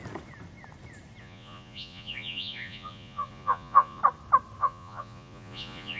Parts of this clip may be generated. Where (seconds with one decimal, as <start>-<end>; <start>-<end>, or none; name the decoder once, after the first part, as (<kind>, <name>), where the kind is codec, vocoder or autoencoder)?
1.2-4.0 (vocoder, Vocos); 4.6-6.0